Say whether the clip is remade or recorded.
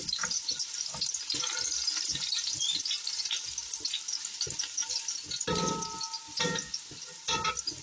recorded